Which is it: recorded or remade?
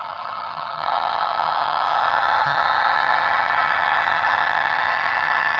remade